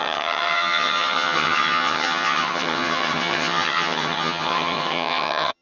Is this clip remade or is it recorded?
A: remade